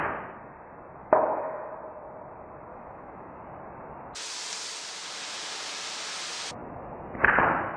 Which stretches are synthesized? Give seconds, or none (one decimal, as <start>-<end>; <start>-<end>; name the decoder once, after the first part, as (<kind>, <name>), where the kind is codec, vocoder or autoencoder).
1.0-1.7 (autoencoder, DAC-VAE); 2.7-3.4